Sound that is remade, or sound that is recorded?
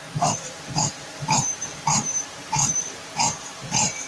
remade